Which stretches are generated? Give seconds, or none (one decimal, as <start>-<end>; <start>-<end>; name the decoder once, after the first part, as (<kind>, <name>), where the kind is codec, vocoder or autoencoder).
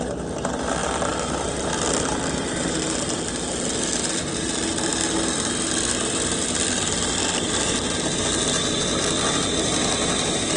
none